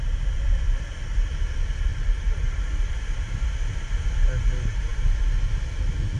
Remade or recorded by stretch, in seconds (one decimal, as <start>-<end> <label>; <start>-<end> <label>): 0.0-1.9 recorded; 1.9-2.6 remade; 2.6-6.2 recorded